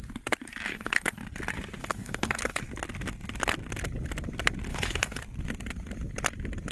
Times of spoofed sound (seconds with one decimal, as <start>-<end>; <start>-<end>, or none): 0.7-1.2; 1.8-2.6; 4.7-5.2